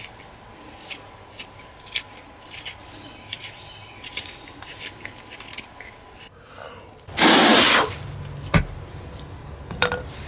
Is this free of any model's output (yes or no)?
yes